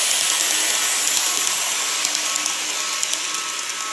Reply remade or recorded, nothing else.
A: recorded